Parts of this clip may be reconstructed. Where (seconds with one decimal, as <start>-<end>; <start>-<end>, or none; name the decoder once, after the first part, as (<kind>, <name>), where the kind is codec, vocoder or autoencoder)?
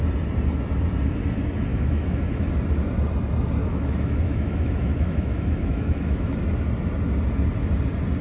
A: 1.7-2.5 (autoencoder, DAC-VAE); 3.6-6.4